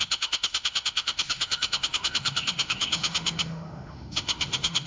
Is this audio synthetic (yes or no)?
yes